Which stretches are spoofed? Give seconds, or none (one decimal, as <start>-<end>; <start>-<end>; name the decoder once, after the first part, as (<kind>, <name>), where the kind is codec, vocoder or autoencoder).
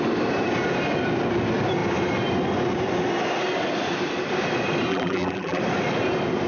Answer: 4.9-5.6 (vocoder, BigVGAN v2)